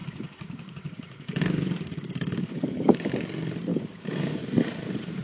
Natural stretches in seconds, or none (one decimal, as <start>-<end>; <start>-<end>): 3.1-3.7; 4.4-5.2